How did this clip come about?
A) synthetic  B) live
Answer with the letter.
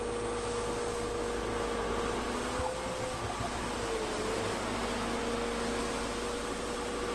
B